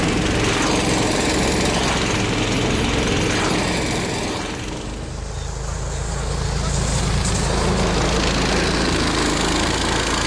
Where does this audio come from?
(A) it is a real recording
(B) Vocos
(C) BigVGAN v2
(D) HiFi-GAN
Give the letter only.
A